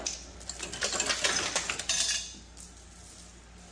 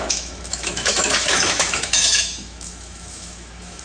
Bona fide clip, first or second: first